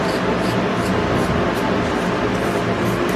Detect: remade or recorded recorded